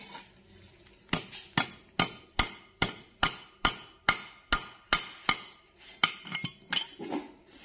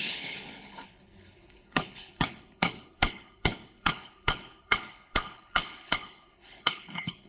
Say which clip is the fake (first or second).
second